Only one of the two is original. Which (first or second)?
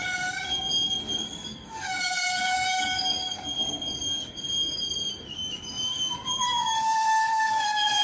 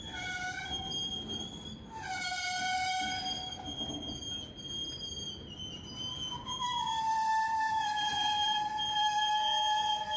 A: second